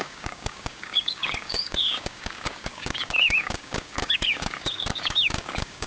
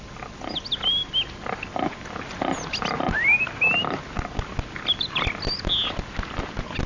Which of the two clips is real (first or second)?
second